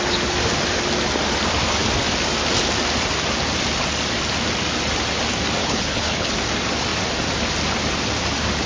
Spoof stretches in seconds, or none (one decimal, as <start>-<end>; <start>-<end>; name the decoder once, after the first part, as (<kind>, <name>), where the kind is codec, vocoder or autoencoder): 5.6-6.3 (codec, HILCodec)